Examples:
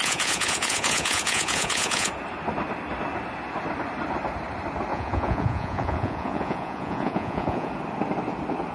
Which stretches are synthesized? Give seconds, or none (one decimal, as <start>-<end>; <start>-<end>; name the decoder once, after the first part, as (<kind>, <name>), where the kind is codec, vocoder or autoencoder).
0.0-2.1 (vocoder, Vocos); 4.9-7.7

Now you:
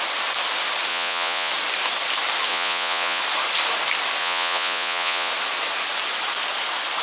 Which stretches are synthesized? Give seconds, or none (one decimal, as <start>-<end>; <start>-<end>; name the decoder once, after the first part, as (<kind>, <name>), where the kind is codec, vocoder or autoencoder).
0.9-1.5 (vocoder, Vocos); 2.5-3.2; 4.2-5.3

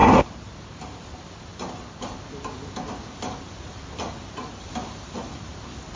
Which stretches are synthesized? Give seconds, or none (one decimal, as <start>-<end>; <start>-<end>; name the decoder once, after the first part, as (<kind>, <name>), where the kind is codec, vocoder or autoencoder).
none

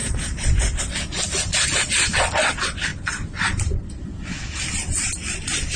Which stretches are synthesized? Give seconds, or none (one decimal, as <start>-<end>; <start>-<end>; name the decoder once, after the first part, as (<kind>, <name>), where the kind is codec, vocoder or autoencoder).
none

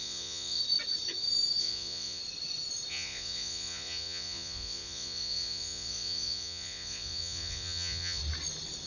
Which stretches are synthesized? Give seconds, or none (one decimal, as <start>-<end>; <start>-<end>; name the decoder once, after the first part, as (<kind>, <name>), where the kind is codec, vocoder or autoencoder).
0.0-0.6 (vocoder, Vocos); 1.6-2.2; 2.9-8.2

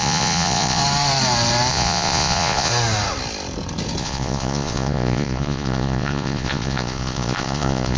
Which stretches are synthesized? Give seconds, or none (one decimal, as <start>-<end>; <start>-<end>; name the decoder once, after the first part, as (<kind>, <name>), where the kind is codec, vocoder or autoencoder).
0.0-0.8 (vocoder, Vocos); 1.7-2.7; 4.0-8.0